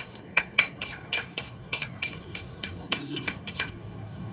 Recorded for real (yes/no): no